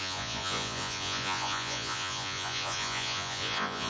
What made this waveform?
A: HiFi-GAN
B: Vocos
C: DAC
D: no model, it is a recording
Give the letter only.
B